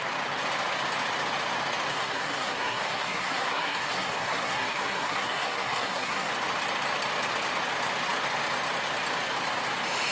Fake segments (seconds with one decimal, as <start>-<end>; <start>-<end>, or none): 1.9-6.3